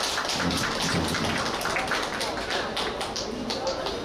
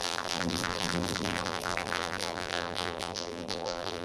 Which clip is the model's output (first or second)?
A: second